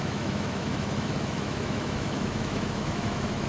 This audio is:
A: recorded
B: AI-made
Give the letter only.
B